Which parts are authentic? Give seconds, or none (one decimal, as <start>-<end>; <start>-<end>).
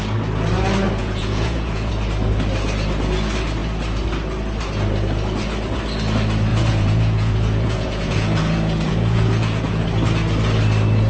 0.0-1.0; 1.9-6.5; 9.8-11.1